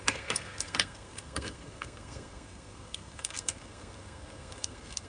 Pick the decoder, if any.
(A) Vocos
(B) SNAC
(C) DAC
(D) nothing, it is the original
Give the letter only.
B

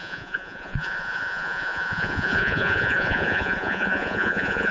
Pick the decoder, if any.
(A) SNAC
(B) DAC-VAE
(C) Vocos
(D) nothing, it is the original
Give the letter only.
C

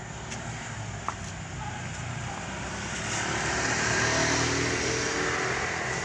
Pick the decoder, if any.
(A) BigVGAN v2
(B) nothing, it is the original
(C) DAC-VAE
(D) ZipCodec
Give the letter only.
B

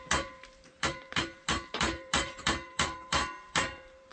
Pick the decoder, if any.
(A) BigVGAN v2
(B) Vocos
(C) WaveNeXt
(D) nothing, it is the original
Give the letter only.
A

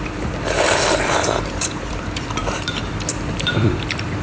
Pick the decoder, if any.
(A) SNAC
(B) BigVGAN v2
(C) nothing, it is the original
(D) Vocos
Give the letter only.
B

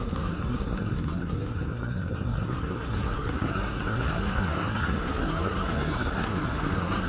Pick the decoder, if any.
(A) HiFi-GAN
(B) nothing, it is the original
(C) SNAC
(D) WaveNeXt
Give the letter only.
C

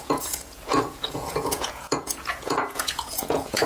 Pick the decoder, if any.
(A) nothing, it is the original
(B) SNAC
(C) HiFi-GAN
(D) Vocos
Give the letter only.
D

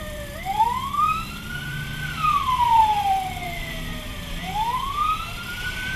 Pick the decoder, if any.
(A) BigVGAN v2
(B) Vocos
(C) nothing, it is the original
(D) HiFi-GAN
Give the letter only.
A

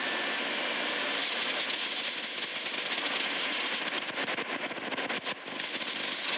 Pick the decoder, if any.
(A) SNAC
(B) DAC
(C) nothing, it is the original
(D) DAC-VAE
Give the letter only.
C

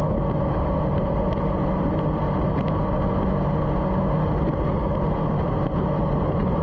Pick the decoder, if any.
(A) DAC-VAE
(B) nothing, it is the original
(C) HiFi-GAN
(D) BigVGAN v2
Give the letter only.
B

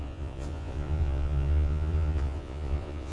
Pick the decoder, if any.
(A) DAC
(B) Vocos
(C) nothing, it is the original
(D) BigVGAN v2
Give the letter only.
B